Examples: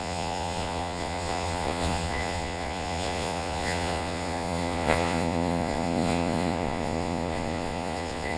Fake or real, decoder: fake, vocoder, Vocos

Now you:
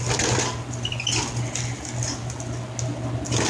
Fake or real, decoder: real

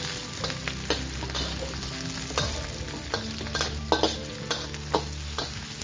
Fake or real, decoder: real